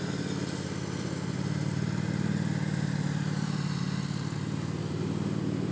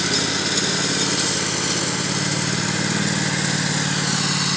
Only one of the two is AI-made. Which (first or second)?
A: first